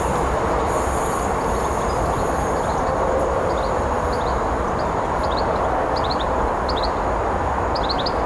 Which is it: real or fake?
real